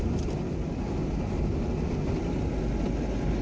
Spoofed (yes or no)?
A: no